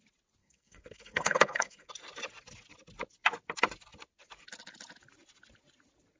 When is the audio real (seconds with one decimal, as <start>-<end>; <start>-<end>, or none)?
0.0-0.4; 1.9-6.2